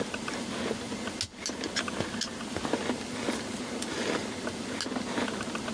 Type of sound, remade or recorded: recorded